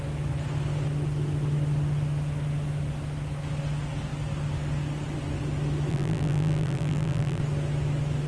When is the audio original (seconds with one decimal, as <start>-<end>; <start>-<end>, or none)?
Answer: 0.0-5.9; 7.4-8.3